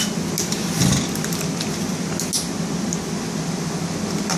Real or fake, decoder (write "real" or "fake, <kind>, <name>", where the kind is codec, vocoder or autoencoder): real